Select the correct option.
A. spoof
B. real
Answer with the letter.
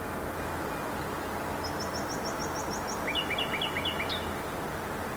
B